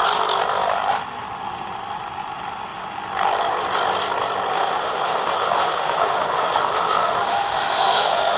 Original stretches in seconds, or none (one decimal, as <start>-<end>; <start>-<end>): 0.0-4.5